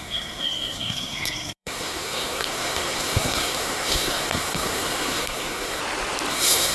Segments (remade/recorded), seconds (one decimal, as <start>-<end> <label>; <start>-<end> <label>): 0.0-5.8 remade; 5.8-6.3 recorded; 6.3-6.7 remade